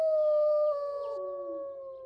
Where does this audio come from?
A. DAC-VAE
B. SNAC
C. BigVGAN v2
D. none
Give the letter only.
D